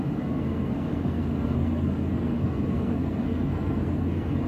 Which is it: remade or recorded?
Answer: remade